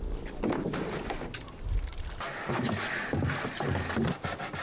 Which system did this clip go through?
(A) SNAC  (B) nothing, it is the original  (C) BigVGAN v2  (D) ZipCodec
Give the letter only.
B